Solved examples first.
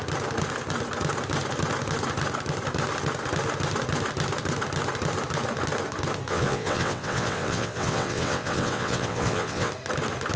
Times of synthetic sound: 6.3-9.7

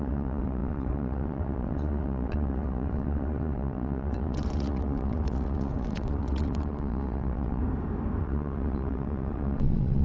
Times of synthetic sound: 0.0-7.6; 8.2-10.0

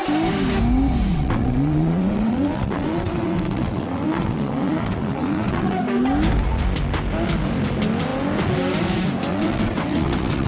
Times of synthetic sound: 1.1-5.8; 9.3-10.5

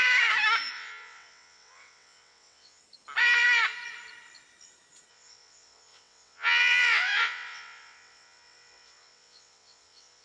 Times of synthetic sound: 0.7-2.8; 5.1-10.2

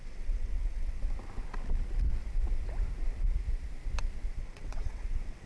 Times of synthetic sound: 0.0-1.0; 4.3-5.5

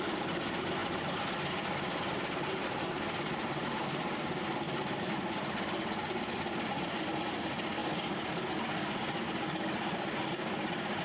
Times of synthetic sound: none

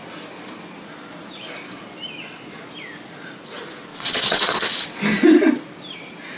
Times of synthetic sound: 3.9-4.5